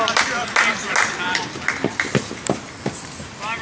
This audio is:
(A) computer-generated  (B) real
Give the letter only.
B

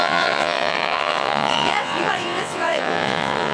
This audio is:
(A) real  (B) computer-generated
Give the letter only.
B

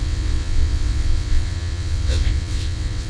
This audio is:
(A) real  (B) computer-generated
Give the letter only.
B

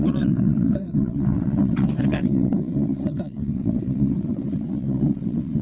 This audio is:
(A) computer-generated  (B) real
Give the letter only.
A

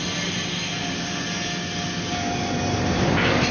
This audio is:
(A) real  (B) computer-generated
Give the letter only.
A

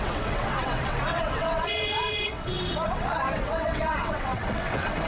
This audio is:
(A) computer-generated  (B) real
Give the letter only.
A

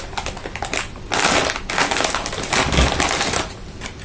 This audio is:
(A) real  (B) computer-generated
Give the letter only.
A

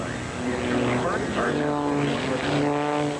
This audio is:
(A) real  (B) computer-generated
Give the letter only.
A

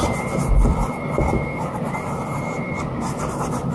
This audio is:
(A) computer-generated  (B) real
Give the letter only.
B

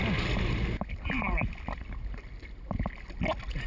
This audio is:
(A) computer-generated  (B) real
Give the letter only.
B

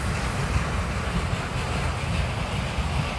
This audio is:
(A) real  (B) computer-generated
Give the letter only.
A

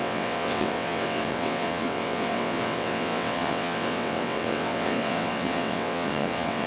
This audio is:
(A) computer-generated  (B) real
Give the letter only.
A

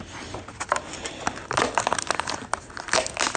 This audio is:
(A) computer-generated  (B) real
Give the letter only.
B